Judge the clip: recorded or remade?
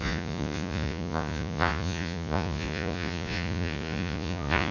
remade